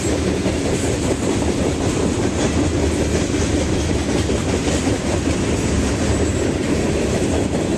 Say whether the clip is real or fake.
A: real